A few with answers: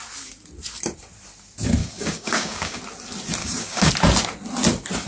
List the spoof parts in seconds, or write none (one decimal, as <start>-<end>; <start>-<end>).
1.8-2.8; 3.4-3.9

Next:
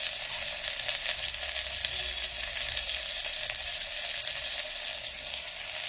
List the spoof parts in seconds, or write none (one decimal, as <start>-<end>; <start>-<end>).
none

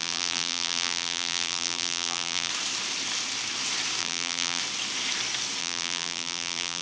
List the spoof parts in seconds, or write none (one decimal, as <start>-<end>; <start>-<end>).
0.0-2.5; 4.0-4.6; 5.6-6.8